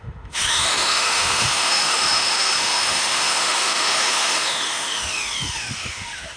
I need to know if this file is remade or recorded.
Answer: remade